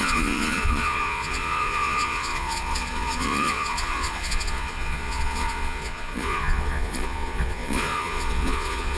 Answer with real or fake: fake